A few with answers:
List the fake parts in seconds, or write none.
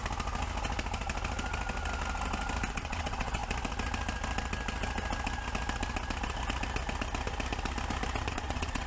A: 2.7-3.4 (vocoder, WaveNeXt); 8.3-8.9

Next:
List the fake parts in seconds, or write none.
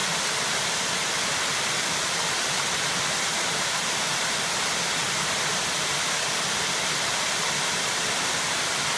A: none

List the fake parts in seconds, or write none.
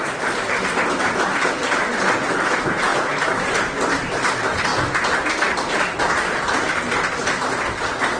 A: none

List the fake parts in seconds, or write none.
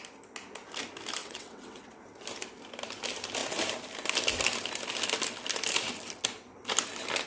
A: 1.2-2.0 (vocoder, WaveNeXt)